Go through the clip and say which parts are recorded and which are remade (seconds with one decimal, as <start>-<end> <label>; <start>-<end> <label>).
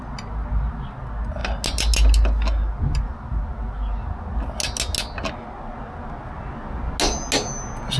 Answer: 0.0-8.0 recorded